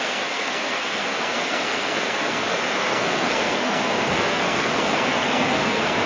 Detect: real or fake fake